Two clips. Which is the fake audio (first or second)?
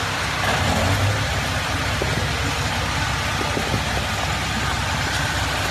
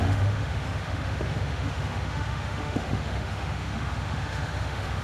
second